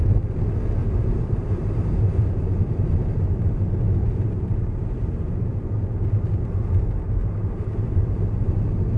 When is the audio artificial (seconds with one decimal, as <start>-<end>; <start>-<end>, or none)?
0.8-3.5; 4.0-5.5; 7.2-9.0